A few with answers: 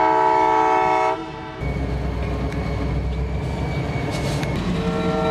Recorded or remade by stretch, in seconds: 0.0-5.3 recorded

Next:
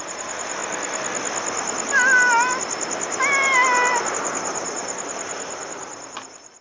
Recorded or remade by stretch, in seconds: 0.0-0.6 remade; 0.6-4.1 recorded; 4.1-6.6 remade